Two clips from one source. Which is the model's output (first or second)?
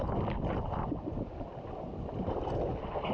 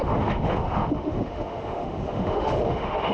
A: second